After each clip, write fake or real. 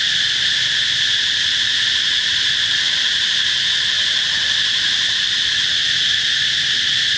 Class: real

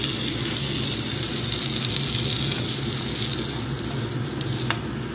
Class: real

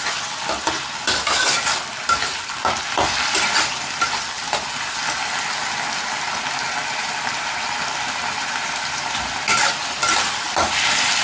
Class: real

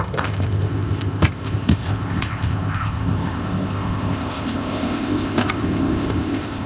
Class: fake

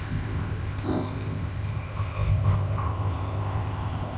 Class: fake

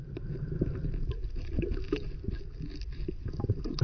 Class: real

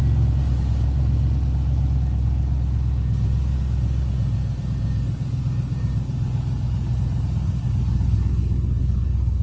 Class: real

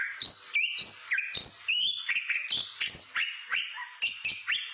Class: real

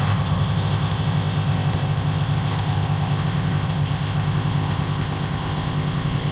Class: fake